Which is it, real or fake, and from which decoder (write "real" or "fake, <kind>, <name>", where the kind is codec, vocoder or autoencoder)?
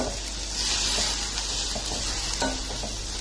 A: real